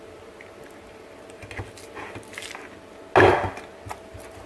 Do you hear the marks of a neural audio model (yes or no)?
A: no